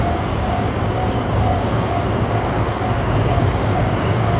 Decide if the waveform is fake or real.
fake